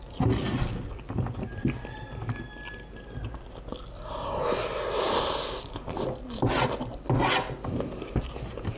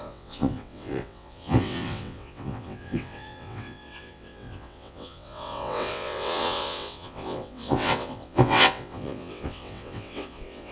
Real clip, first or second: first